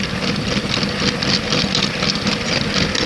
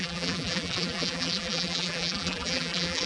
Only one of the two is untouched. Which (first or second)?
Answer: first